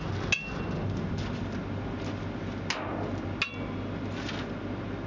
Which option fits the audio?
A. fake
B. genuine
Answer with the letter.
B